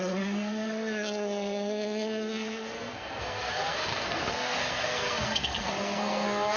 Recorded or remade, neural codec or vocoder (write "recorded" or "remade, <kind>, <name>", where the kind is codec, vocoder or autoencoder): remade, codec, SNAC